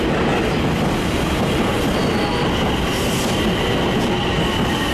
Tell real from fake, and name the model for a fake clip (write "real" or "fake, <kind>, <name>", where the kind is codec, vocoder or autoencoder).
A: real